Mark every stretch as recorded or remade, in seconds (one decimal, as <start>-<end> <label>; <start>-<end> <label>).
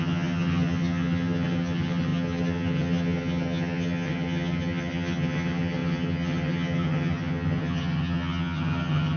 0.0-9.2 remade